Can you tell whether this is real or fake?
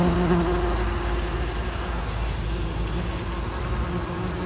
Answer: real